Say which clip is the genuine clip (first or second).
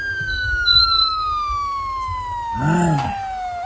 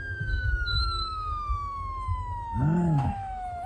first